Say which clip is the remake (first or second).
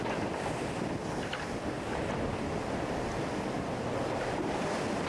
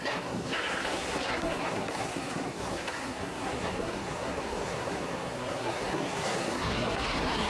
second